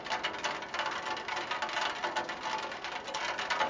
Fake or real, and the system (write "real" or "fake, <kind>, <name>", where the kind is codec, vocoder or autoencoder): real